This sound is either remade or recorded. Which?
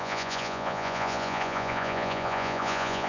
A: remade